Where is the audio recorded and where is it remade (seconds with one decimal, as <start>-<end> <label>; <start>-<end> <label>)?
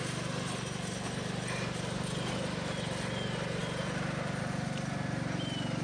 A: 0.0-5.8 recorded